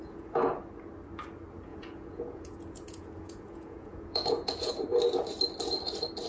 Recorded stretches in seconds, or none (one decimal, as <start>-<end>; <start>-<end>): 0.6-1.7; 4.7-6.3